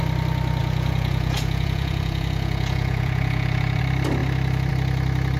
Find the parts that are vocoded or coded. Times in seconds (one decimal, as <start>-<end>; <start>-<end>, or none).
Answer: 0.6-3.8